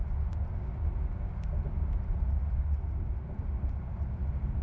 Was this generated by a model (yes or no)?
no